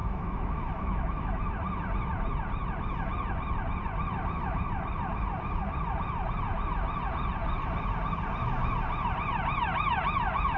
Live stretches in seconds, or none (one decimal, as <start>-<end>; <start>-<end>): 1.5-10.6